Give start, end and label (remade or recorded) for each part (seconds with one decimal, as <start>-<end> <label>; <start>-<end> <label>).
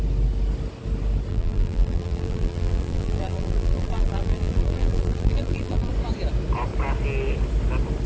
0.0-1.3 recorded; 1.3-5.9 remade; 5.9-8.1 recorded